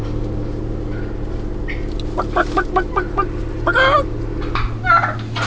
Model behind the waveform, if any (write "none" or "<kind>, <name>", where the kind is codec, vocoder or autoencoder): none